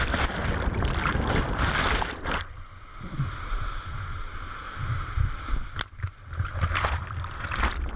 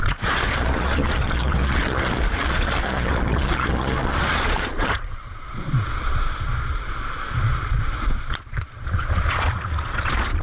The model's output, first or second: second